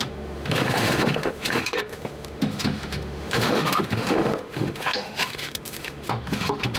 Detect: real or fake fake